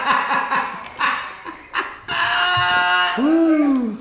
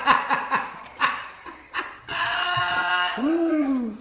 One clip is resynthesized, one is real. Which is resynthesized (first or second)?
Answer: second